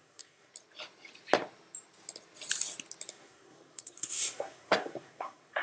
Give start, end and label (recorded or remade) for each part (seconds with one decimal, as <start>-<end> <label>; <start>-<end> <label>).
0.0-0.5 remade; 0.5-3.1 recorded; 3.1-5.6 remade